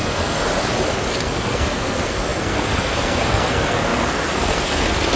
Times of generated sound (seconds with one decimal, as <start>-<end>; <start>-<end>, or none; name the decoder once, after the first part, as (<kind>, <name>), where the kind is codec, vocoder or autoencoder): 0.0-0.5 (codec, SNAC); 1.1-5.2